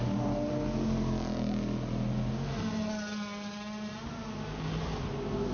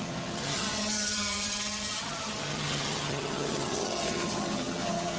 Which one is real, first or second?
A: first